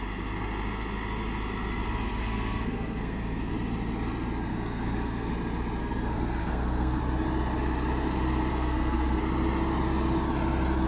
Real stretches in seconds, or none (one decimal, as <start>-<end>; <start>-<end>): 0.0-2.1; 3.5-4.5; 5.3-5.8; 7.0-8.5; 9.2-10.9